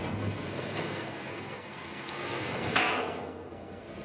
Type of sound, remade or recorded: remade